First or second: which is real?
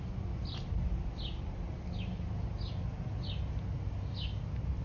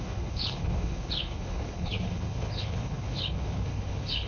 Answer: first